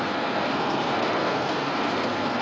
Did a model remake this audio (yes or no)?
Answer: yes